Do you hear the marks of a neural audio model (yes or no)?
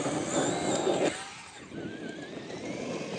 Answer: no